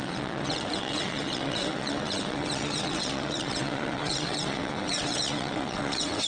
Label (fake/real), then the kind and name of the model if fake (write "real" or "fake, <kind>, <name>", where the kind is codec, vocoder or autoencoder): fake, vocoder, WaveNeXt